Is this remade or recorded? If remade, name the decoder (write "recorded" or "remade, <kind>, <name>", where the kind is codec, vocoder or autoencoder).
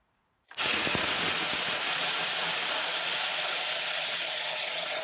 remade, vocoder, Vocos